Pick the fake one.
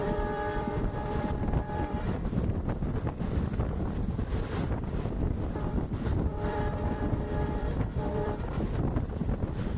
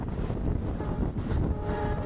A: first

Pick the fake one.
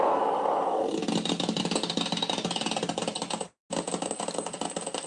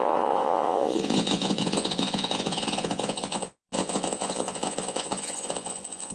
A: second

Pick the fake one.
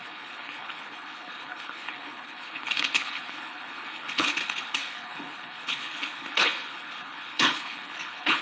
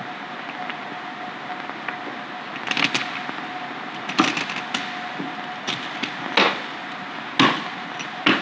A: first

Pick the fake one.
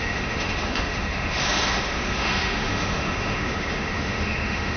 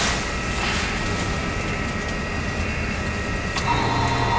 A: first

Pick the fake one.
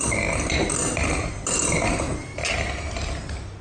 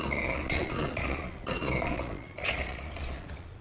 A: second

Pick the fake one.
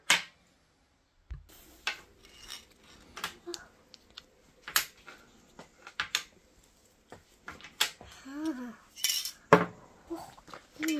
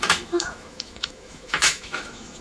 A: second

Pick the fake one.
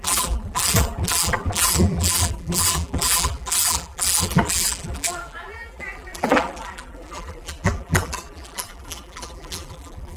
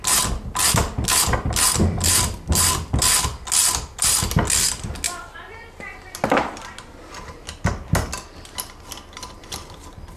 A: first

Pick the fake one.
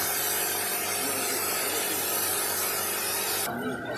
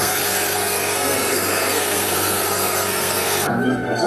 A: second